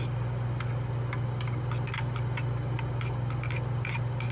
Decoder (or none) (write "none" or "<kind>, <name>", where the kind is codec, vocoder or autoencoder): none